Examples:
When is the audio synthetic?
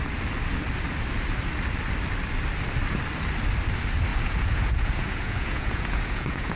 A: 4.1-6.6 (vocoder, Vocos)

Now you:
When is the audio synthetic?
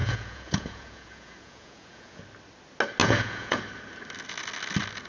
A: 0.0-2.2 (vocoder, Vocos); 3.0-3.6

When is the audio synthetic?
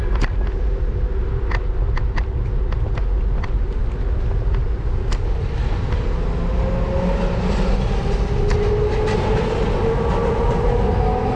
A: none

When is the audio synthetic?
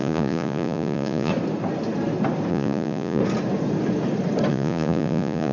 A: 0.0-1.3 (vocoder, Vocos); 2.5-3.2; 4.5-5.5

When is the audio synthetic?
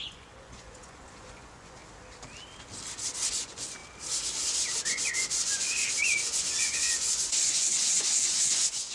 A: 0.0-1.8 (vocoder, Vocos); 3.3-3.8; 4.9-8.9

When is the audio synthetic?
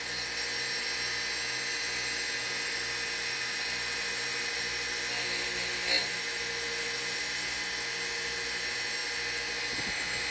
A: none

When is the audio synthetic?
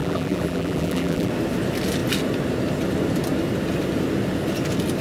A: 0.0-1.3 (vocoder, BigVGAN v2)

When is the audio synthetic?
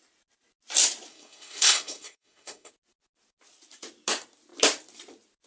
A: 1.1-2.7 (codec, SNAC)